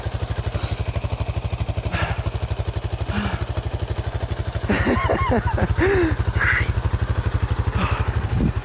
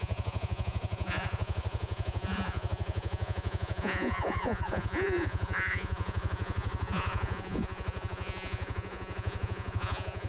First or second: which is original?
first